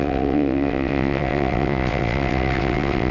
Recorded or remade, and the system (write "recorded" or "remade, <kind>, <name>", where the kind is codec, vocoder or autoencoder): remade, vocoder, WaveNeXt